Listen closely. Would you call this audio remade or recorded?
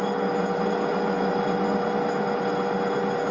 recorded